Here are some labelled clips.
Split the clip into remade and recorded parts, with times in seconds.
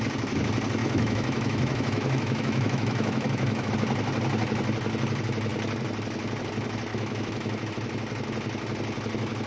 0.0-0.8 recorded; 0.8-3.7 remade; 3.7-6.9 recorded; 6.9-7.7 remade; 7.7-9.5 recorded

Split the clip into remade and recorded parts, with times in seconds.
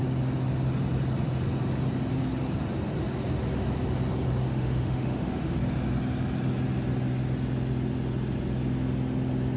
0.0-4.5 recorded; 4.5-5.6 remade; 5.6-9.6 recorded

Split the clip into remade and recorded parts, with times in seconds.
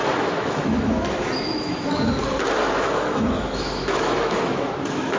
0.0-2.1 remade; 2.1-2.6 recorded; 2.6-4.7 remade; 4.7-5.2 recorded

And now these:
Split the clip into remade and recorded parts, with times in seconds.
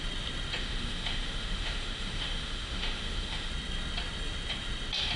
0.0-0.6 recorded; 0.6-3.5 remade; 3.5-5.2 recorded